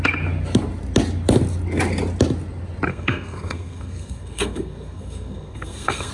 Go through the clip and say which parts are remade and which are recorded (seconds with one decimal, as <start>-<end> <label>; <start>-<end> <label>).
0.0-2.9 recorded; 2.9-6.1 remade